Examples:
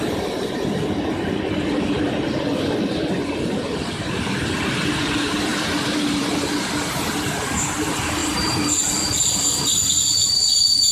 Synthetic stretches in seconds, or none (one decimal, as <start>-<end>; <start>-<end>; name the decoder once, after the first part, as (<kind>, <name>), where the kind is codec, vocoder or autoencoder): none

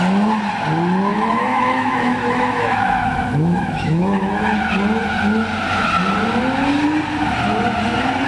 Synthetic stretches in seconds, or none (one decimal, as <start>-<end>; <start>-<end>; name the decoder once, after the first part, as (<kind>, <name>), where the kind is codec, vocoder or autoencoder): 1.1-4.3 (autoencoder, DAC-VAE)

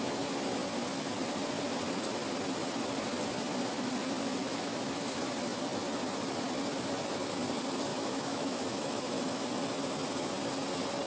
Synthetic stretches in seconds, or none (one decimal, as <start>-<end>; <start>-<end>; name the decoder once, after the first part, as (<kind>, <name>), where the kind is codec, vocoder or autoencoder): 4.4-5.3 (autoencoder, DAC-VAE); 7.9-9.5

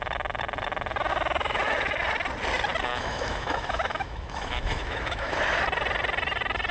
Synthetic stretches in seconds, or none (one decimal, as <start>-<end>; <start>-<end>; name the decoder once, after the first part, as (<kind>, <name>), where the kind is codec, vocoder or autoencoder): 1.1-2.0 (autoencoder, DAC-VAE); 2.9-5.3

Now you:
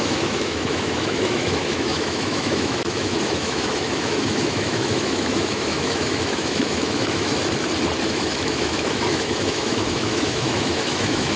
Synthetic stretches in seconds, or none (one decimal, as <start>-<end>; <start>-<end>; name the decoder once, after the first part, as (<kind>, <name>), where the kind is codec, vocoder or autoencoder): 0.0-7.4 (autoencoder, DAC-VAE); 8.1-11.4

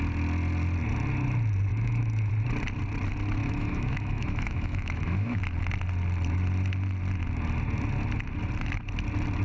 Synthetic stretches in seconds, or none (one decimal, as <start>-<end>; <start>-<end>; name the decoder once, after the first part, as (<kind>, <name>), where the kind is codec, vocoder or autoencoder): 1.7-2.3 (autoencoder, DAC-VAE); 3.4-5.4